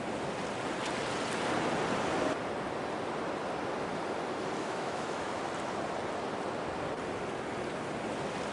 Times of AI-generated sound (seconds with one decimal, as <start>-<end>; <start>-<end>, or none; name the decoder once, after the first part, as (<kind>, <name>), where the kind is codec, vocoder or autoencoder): 4.6-5.4 (autoencoder, DAC-VAE)